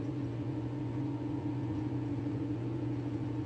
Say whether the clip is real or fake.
fake